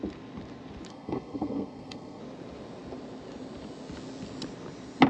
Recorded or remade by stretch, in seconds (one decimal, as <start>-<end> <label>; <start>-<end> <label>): 0.0-0.9 recorded; 0.9-2.2 remade; 2.2-5.1 recorded